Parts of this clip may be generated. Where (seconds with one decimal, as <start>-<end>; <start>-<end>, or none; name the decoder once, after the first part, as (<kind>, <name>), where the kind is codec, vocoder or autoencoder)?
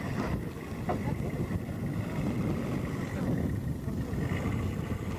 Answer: none